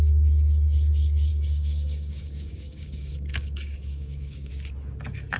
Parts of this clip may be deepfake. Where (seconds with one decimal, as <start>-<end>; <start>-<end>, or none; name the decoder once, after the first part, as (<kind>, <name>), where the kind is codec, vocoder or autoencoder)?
1.3-4.5 (codec, DAC)